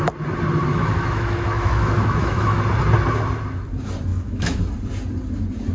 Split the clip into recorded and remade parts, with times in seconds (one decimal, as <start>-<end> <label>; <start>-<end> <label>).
0.0-0.7 recorded; 0.7-2.6 remade; 2.6-4.1 recorded; 4.1-4.6 remade; 4.6-5.7 recorded